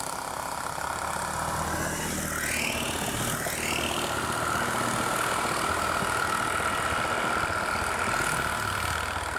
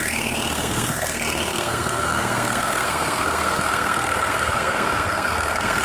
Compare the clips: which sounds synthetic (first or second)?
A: second